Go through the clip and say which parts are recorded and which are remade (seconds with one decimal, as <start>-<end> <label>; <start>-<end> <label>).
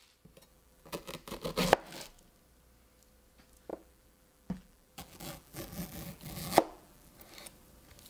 0.0-0.5 recorded; 0.5-1.0 remade; 1.0-3.7 recorded; 3.7-7.1 remade; 7.1-8.1 recorded